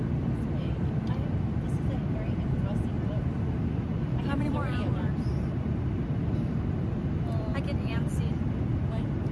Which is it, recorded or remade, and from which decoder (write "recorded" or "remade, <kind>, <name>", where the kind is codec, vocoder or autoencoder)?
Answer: remade, vocoder, BigVGAN v2